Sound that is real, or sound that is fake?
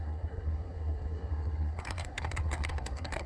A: fake